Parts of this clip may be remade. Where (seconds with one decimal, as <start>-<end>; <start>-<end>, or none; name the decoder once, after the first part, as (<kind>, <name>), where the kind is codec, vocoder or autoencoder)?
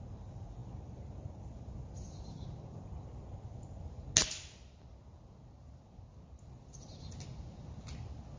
none